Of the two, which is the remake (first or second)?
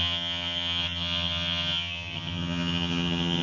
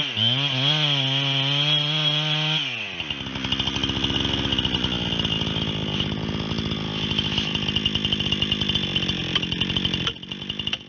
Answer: first